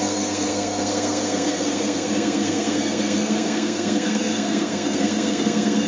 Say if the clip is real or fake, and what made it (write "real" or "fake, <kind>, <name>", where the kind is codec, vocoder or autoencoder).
fake, codec, SNAC